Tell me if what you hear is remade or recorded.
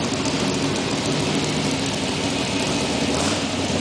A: recorded